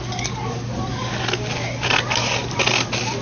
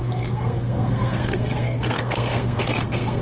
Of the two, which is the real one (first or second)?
first